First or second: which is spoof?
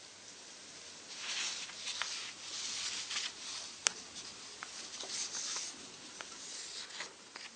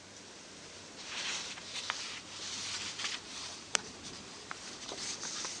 second